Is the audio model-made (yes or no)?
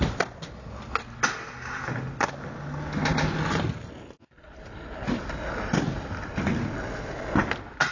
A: no